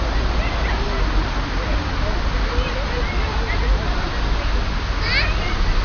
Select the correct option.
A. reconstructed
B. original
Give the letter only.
B